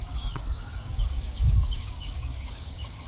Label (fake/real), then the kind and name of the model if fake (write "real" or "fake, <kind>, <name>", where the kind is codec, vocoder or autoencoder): fake, codec, DAC